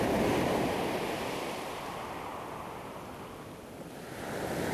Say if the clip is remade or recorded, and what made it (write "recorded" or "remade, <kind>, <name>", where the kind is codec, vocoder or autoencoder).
recorded